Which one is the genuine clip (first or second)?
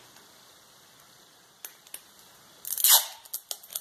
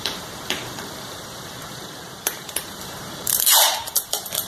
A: first